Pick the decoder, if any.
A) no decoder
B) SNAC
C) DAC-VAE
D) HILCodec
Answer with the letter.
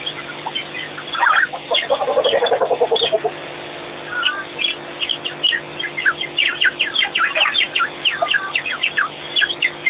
A